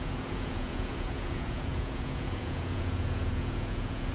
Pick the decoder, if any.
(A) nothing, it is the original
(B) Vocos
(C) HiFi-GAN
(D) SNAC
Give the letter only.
B